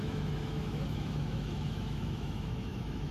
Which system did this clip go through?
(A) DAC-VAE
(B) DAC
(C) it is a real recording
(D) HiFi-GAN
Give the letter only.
A